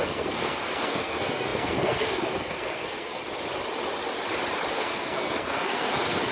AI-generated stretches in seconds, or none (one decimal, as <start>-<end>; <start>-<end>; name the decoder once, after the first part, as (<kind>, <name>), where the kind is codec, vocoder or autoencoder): 0.0-3.2 (codec, SNAC); 4.7-6.3